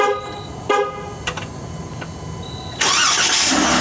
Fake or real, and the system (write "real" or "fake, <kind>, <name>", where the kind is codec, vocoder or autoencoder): real